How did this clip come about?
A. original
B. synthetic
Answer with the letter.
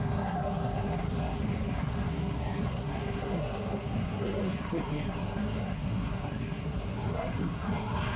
B